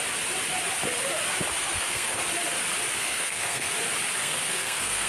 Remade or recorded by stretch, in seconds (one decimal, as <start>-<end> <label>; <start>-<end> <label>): 0.0-1.6 recorded; 1.6-2.2 remade; 2.2-3.0 recorded; 3.0-3.7 remade; 3.7-4.2 recorded; 4.2-5.1 remade